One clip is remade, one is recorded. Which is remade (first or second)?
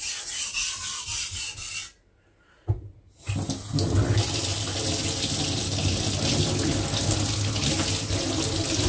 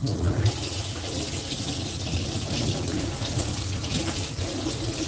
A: second